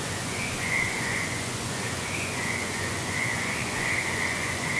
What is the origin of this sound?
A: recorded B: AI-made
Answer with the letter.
B